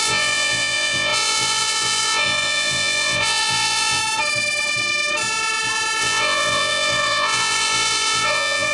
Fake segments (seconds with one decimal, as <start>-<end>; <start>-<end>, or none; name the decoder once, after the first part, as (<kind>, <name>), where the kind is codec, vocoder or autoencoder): 0.0-4.0 (vocoder, Vocos); 6.0-8.7